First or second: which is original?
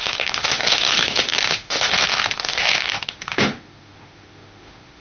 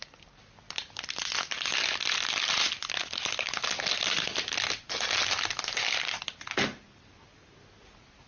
second